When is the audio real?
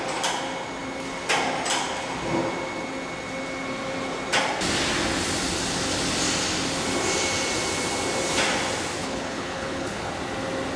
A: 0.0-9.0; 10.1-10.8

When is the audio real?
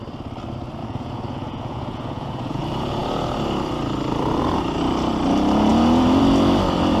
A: 0.0-0.8; 2.6-7.0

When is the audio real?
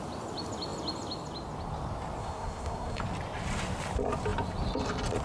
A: 0.0-2.2; 3.0-5.2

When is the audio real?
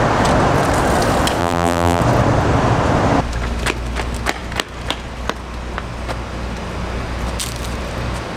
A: 0.0-1.4; 2.0-8.4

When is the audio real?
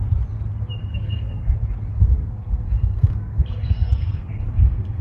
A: 0.0-0.9; 1.5-1.9